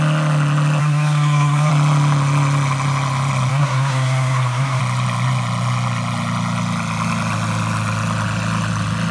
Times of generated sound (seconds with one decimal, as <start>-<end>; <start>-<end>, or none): 0.8-1.7; 3.5-4.8